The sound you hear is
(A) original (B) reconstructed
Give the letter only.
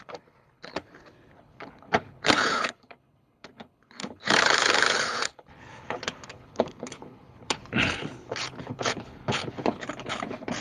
B